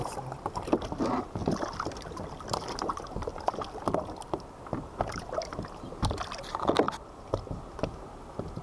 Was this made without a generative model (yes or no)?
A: yes